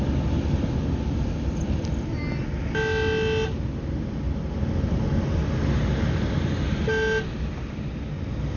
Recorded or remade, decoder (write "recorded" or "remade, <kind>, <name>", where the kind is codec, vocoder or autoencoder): recorded